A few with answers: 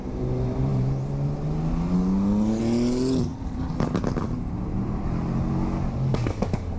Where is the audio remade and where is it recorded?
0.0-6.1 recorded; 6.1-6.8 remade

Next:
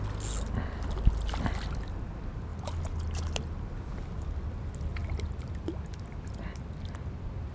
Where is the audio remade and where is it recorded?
0.0-7.5 recorded

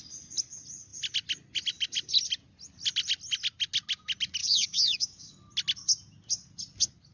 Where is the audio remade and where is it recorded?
0.0-4.4 recorded; 4.4-5.3 remade; 5.3-7.1 recorded